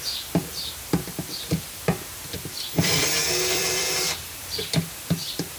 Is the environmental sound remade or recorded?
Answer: remade